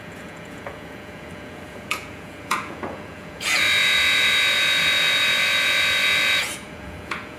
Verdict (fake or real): fake